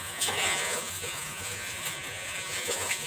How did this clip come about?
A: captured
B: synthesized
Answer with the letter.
B